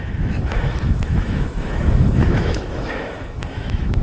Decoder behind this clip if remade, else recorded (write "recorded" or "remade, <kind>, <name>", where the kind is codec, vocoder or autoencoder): remade, autoencoder, DAC-VAE